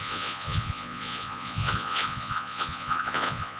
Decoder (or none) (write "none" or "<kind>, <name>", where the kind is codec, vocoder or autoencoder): vocoder, Vocos